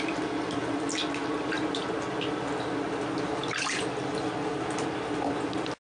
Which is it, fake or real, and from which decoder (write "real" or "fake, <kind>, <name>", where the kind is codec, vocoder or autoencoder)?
real